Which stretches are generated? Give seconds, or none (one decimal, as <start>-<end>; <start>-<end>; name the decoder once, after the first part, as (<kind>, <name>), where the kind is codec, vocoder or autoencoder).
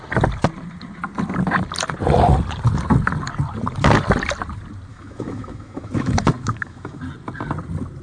4.9-7.0 (autoencoder, DAC-VAE)